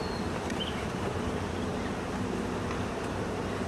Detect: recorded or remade remade